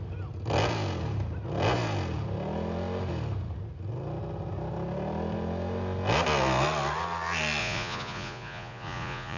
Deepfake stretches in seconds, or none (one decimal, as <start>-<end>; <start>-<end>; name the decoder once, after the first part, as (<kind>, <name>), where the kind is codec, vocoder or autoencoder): 7.6-9.4 (vocoder, Vocos)